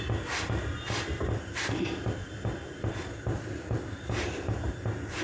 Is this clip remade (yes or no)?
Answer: no